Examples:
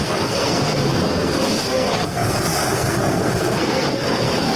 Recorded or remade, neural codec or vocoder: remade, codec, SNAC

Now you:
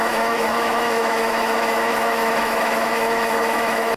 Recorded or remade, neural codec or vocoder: remade, autoencoder, DAC-VAE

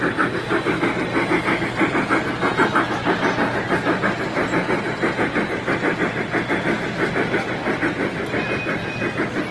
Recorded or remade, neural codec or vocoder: recorded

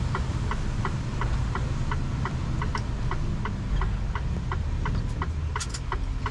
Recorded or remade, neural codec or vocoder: recorded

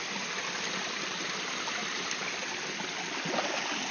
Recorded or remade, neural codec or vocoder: recorded